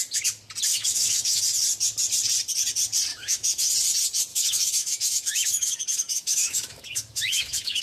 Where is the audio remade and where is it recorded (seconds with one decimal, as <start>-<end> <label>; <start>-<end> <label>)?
0.0-0.7 recorded; 0.7-1.4 remade; 1.4-3.1 recorded; 3.1-3.7 remade; 3.7-4.3 recorded; 4.3-7.8 remade